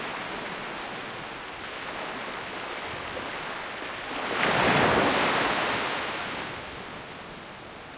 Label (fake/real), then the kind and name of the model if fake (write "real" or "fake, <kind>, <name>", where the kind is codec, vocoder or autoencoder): real